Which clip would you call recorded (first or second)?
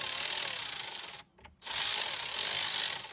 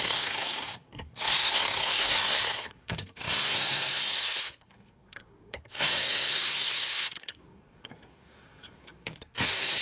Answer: first